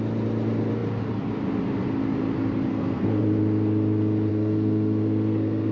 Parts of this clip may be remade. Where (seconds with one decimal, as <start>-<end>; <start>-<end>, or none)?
2.7-3.2; 4.3-5.7